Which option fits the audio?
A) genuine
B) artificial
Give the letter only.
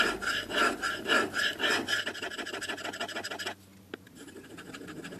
A